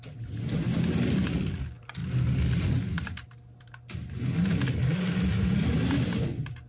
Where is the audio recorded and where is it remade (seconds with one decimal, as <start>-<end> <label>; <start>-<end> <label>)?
0.0-6.7 recorded